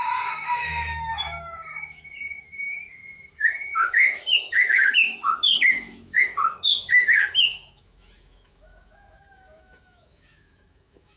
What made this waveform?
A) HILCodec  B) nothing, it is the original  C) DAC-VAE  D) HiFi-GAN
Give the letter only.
C